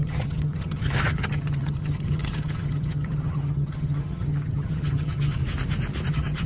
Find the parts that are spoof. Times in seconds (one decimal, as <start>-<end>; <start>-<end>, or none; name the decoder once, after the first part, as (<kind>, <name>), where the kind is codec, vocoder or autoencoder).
0.0-5.4 (vocoder, HiFi-GAN); 6.1-6.5